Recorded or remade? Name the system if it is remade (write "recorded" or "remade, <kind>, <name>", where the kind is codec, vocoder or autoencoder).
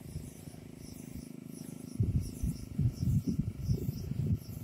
remade, vocoder, BigVGAN v2